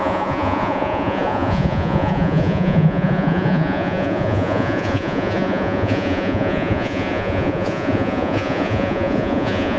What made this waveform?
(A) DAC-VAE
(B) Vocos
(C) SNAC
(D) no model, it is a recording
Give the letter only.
B